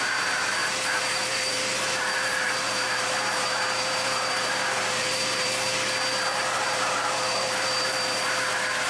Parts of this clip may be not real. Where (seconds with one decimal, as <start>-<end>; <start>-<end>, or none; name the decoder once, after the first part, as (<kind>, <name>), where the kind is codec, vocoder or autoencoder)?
0.6-5.5 (vocoder, BigVGAN v2); 6.3-8.3